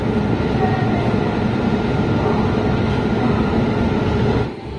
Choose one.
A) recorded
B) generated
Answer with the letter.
A